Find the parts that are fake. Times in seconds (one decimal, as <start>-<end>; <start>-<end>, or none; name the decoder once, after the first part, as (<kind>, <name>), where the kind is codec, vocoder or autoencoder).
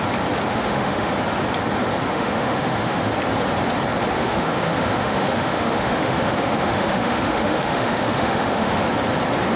0.5-1.1 (autoencoder, DAC-VAE); 2.1-3.1; 4.2-8.8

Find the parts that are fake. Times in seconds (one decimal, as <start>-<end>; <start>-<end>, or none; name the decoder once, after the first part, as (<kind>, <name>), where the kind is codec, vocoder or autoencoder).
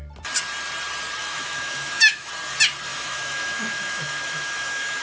1.2-2.3 (autoencoder, DAC-VAE); 2.9-5.0